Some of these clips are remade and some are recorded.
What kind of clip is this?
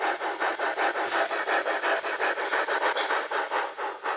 recorded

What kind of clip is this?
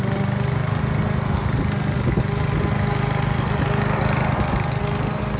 recorded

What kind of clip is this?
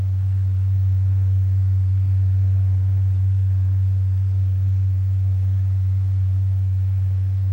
remade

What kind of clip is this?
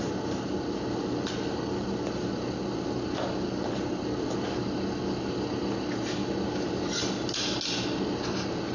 recorded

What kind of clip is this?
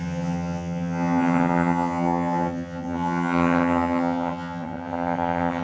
remade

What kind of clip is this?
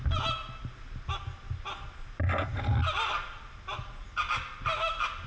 recorded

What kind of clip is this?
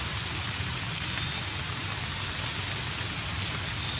recorded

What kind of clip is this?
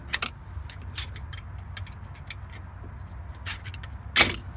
recorded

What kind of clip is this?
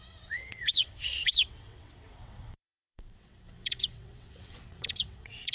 remade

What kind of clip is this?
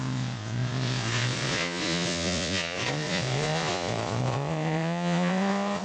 remade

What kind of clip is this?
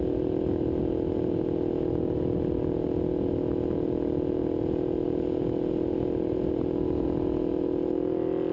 recorded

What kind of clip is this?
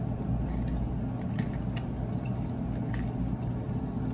recorded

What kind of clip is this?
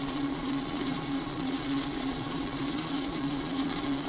remade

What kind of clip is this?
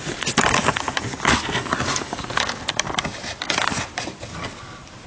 recorded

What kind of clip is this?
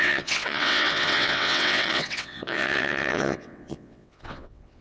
remade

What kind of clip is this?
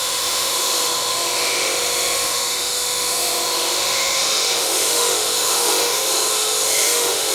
remade